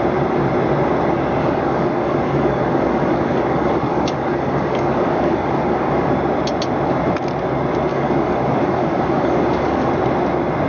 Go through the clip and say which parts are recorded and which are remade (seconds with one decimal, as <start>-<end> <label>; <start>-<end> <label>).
0.0-1.4 recorded; 1.4-6.1 remade; 6.1-7.9 recorded; 7.9-9.9 remade; 9.9-10.7 recorded